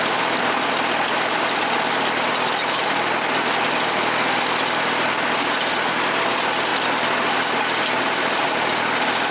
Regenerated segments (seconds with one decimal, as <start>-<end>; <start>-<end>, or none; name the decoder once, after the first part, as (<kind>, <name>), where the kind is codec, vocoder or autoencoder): none